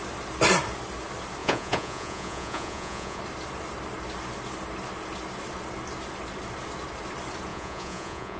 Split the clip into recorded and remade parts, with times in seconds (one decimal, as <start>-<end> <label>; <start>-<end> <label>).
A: 0.0-1.4 recorded; 1.4-3.2 remade; 3.2-7.5 recorded; 7.5-8.4 remade